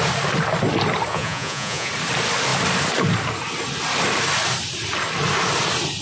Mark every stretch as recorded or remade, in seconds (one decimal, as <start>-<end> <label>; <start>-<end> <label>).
0.0-1.1 recorded; 1.1-1.9 remade; 1.9-6.0 recorded